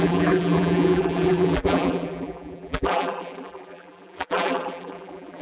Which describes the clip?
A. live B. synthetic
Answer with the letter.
B